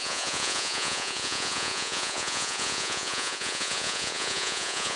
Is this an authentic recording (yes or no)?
no